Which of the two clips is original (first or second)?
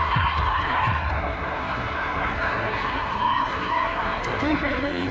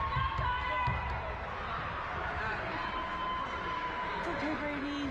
second